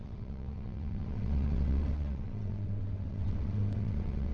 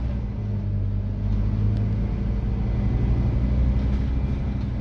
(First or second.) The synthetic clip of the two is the first